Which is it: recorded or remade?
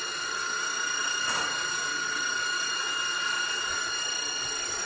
recorded